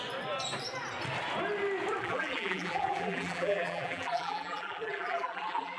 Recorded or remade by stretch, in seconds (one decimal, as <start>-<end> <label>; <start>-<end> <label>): 0.0-2.0 recorded; 2.0-5.8 remade